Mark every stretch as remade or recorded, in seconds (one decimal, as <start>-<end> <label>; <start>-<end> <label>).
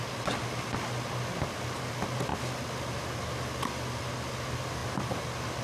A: 0.0-5.6 recorded